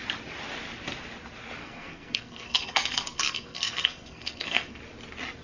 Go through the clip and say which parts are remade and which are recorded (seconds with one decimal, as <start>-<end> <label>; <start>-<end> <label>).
0.0-1.6 recorded; 1.6-4.8 remade; 4.8-5.4 recorded